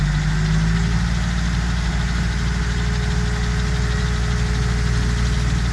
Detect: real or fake real